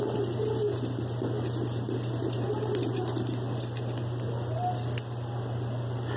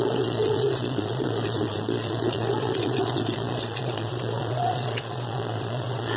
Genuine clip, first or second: first